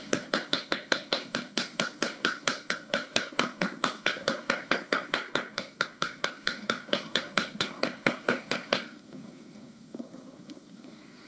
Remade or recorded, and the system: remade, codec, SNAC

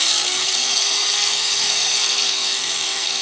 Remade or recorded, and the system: remade, codec, SNAC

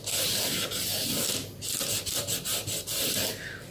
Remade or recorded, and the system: recorded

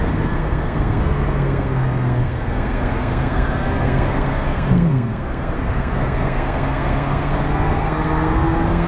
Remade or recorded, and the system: remade, codec, SNAC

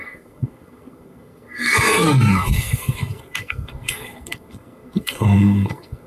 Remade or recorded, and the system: remade, codec, SNAC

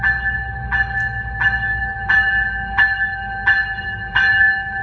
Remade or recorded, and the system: recorded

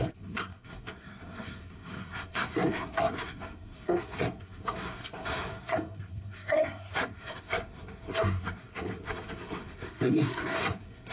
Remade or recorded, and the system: remade, codec, SNAC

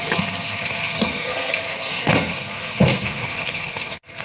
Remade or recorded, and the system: remade, codec, SNAC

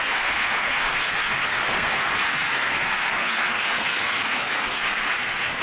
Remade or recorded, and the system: remade, codec, SNAC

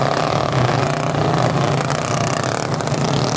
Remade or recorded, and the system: recorded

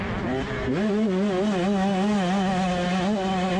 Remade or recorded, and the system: recorded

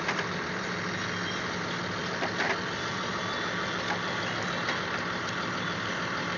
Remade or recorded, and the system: recorded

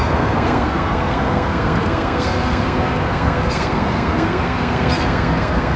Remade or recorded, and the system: remade, codec, SNAC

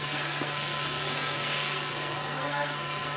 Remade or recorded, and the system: remade, codec, SNAC